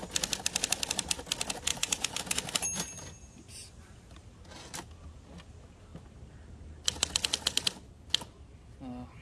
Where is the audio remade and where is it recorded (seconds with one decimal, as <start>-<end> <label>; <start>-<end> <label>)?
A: 0.0-1.7 recorded; 1.7-2.2 remade; 2.2-9.2 recorded